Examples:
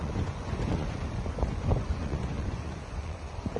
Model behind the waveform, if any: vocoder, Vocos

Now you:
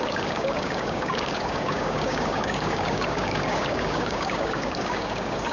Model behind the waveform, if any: codec, DAC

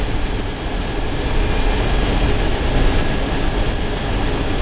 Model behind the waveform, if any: none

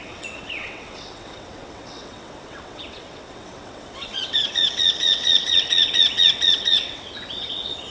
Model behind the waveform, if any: vocoder, WaveNeXt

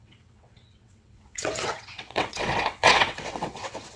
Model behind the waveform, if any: vocoder, WaveNeXt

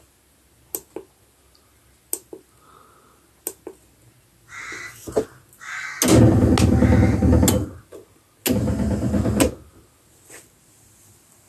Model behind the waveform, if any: none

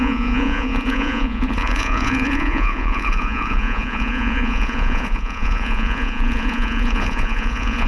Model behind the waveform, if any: vocoder, Vocos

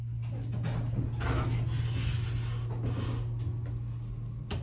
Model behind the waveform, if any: none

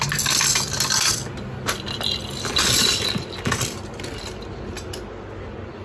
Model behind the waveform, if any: none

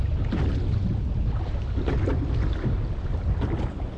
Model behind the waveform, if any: none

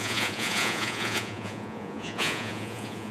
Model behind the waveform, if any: vocoder, Vocos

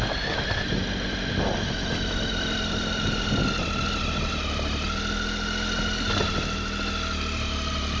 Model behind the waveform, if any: none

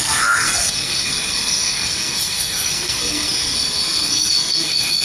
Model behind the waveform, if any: codec, SNAC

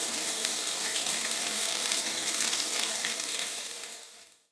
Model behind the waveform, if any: codec, DAC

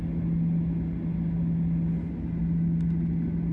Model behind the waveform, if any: none